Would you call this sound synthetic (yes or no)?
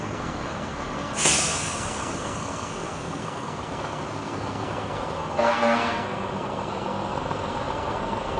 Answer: yes